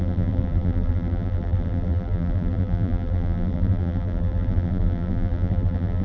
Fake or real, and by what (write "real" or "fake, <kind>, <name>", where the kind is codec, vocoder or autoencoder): fake, vocoder, BigVGAN v2